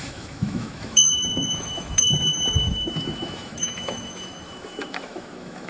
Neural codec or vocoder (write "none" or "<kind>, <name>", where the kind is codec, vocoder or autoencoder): autoencoder, DAC-VAE